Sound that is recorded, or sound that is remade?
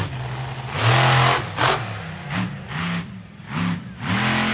recorded